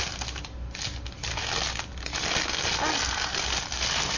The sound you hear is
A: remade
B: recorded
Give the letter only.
B